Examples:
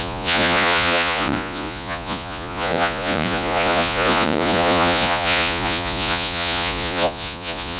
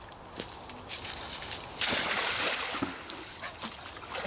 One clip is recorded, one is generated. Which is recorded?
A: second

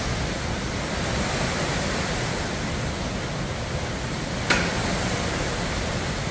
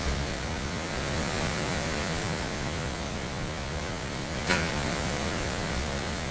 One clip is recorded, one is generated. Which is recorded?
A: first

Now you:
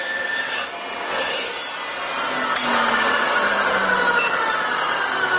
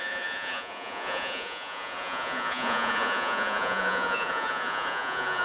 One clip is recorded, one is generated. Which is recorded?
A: first